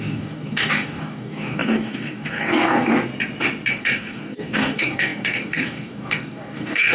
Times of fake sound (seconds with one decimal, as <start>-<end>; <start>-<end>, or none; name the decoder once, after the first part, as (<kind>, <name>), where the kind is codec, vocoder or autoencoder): 0.0-2.9 (codec, DAC); 3.7-6.9

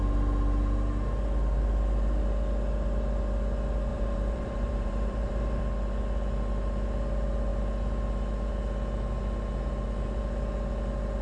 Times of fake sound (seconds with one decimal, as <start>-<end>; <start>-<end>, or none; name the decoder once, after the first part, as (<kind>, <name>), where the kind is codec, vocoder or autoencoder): 3.9-5.6 (vocoder, BigVGAN v2)

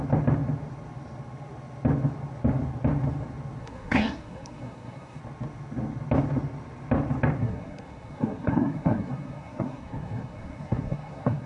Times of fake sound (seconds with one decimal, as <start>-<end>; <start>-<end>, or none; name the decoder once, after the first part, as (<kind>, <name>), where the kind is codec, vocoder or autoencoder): 3.6-5.2 (codec, SNAC); 7.4-11.5

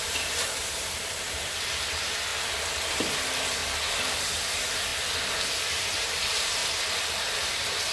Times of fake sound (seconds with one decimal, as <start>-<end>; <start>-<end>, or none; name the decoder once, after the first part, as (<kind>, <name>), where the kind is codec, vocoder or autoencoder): 0.0-2.3 (vocoder, BigVGAN v2); 2.9-3.6; 4.1-4.9; 5.7-6.6; 7.1-7.9

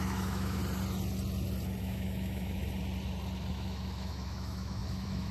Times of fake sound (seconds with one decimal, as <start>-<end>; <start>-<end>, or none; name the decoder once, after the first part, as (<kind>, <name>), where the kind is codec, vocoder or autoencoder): 0.0-0.6 (autoencoder, DAC-VAE); 1.8-2.6; 3.5-5.3

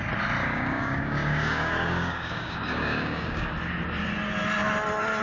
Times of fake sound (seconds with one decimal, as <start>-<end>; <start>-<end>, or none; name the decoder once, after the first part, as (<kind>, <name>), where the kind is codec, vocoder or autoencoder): 0.4-3.5 (codec, DAC)

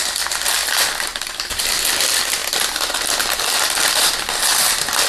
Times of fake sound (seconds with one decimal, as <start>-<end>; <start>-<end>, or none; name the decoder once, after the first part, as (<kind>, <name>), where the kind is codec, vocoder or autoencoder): 1.1-1.6 (vocoder, BigVGAN v2)

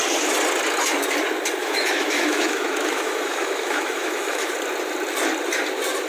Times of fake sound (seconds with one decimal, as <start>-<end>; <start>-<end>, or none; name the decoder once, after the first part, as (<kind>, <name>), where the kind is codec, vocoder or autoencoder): 1.6-4.5 (autoencoder, DAC-VAE)